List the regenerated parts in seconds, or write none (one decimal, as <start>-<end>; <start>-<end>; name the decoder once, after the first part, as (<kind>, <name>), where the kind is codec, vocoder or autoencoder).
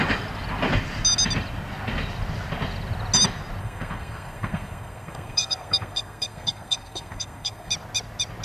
3.6-7.7 (codec, SNAC)